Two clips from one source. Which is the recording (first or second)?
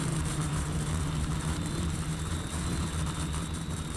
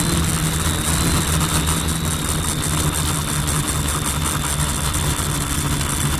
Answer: second